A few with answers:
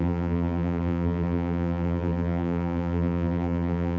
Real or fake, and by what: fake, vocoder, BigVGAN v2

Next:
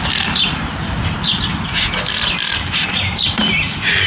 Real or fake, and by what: real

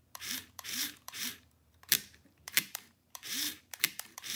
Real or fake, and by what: fake, vocoder, BigVGAN v2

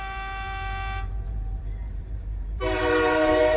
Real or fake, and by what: fake, vocoder, BigVGAN v2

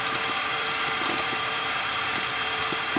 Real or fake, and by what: fake, vocoder, BigVGAN v2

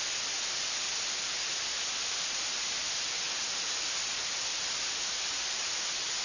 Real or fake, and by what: real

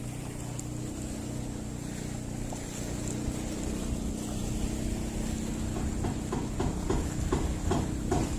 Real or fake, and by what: real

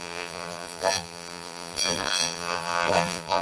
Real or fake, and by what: fake, vocoder, BigVGAN v2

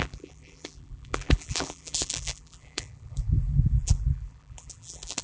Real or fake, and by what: fake, vocoder, BigVGAN v2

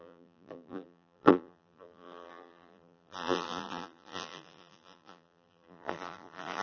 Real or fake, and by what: fake, vocoder, BigVGAN v2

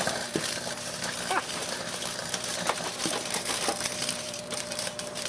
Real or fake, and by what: fake, vocoder, BigVGAN v2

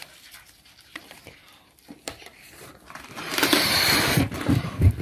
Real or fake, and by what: fake, vocoder, BigVGAN v2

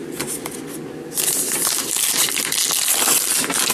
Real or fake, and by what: fake, vocoder, BigVGAN v2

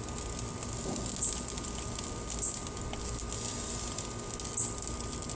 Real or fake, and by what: real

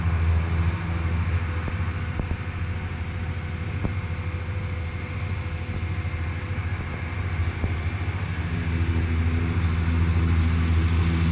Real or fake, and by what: real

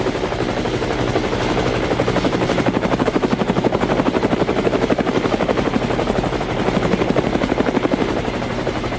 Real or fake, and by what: fake, vocoder, BigVGAN v2